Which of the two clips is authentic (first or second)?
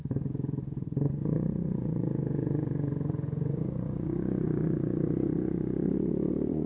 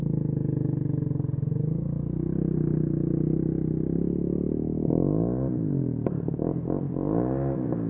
second